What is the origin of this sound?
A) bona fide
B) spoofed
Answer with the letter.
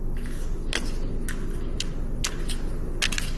A